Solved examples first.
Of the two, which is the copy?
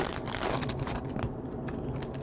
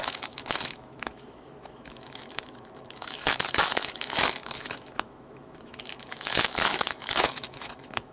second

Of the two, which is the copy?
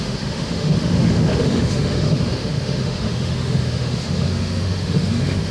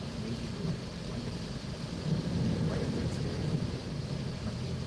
first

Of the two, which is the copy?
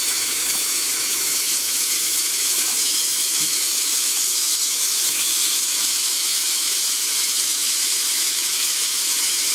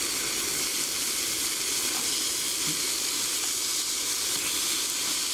first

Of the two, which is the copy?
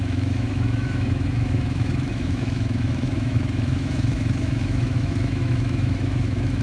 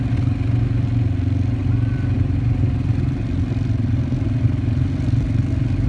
first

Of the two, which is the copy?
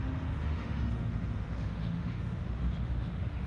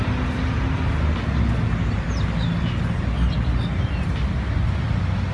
first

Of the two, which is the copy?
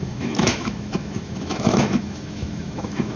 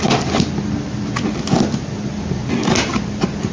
first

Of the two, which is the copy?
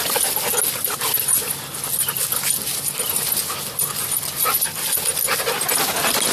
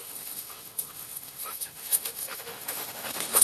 second